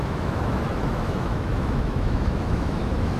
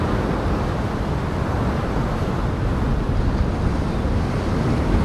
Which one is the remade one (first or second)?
first